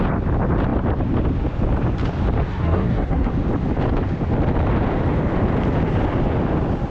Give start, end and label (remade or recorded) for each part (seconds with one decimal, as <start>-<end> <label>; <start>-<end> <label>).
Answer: 0.0-2.5 recorded; 2.5-3.3 remade; 3.3-6.9 recorded